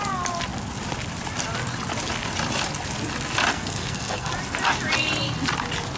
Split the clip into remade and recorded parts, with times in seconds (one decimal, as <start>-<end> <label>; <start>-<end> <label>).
0.0-3.5 recorded; 3.5-4.3 remade; 4.3-6.0 recorded